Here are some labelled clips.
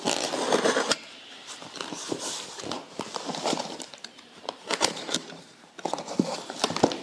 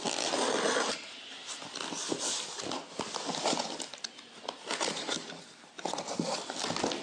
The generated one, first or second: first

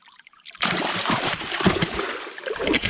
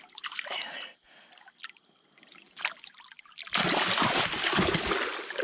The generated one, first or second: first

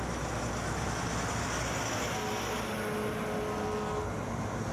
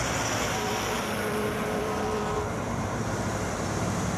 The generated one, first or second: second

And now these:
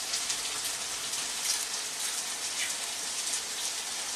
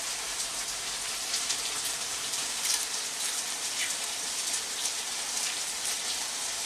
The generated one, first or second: second